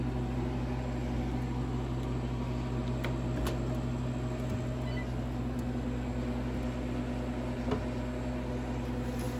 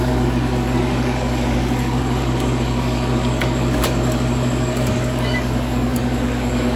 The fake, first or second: second